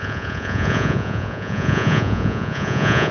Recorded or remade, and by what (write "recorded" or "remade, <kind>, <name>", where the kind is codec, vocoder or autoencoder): remade, vocoder, Vocos